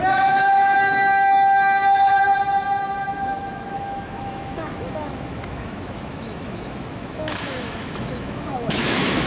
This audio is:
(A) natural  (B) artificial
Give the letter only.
B